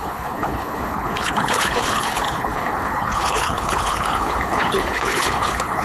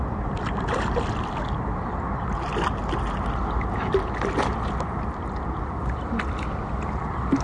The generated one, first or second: first